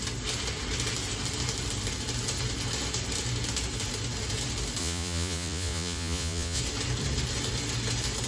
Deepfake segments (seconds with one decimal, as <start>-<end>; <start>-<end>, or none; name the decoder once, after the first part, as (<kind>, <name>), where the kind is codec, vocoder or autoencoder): 4.8-6.6 (vocoder, Vocos)